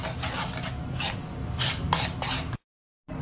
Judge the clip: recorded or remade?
recorded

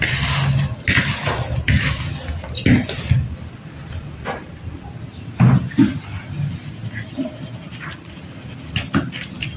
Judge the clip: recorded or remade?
recorded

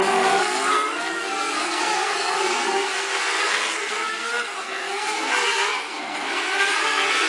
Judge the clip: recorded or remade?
remade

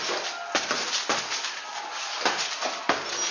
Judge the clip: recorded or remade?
recorded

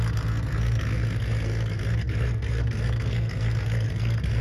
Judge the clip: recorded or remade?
remade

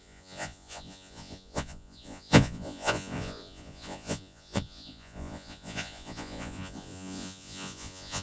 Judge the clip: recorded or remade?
remade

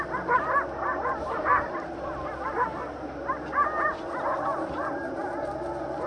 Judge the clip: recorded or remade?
recorded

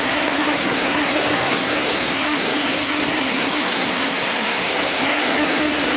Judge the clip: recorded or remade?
remade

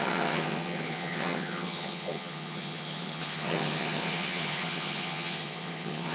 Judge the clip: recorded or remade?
remade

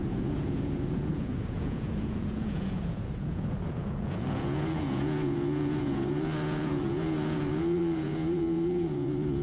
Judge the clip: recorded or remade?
remade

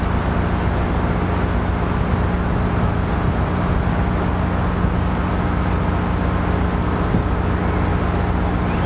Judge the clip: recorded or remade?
recorded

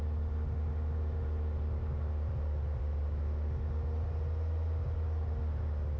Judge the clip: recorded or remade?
recorded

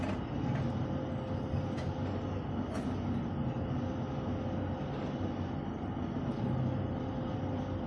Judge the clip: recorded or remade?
recorded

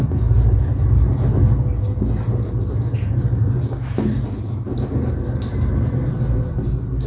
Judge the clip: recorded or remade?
recorded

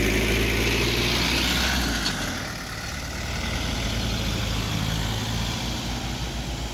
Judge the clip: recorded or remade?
recorded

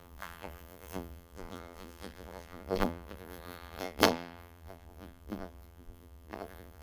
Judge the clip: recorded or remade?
remade